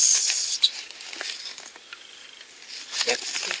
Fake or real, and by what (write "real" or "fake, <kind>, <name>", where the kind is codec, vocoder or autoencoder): real